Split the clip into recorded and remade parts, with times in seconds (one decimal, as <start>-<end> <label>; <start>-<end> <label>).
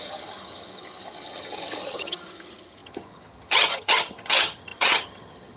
0.0-5.6 remade